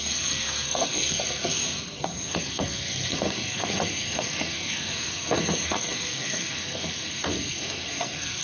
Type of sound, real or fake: fake